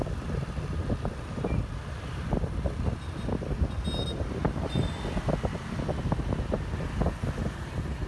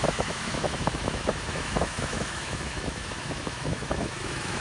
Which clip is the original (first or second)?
first